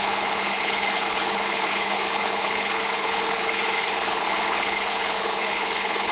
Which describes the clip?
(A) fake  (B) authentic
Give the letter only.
A